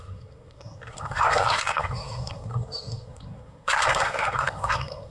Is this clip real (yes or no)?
no